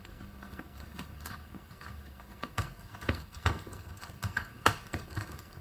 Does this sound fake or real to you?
fake